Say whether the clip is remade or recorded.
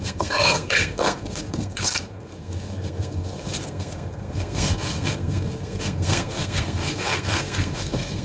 remade